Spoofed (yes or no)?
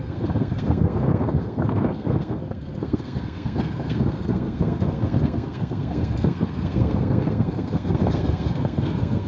yes